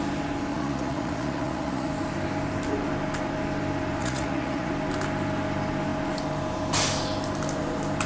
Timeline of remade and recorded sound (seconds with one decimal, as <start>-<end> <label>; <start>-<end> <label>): 0.0-0.5 recorded; 0.5-1.9 remade; 1.9-4.0 recorded; 4.0-4.7 remade; 4.7-8.1 recorded